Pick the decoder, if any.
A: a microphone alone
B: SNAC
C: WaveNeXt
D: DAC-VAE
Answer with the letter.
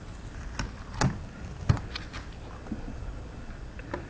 A